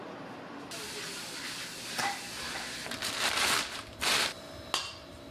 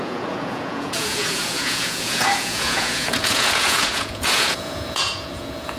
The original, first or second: first